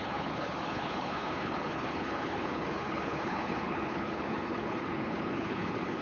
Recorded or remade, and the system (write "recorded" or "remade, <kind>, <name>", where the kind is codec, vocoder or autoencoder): remade, codec, HILCodec